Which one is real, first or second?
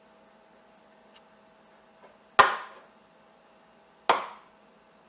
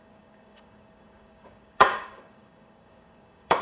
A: first